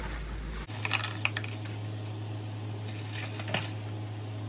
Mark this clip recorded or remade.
recorded